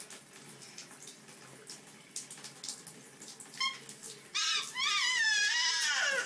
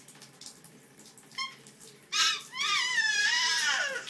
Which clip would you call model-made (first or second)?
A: second